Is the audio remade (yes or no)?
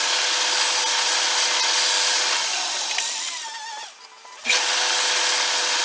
no